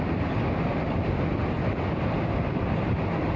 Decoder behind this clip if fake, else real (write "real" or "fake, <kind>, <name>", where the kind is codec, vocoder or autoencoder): real